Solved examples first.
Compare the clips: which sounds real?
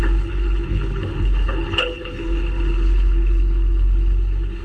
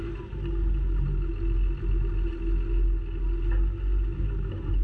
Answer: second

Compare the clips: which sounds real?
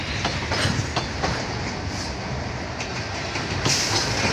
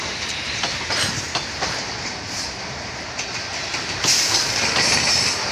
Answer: first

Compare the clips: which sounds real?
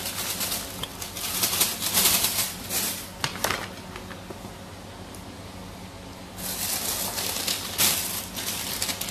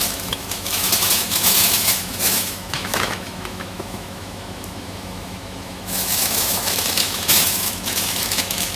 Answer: first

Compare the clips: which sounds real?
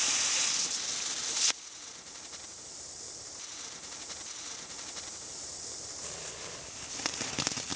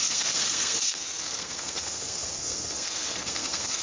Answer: first